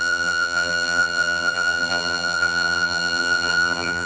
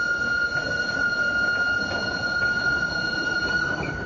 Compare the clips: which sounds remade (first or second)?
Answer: first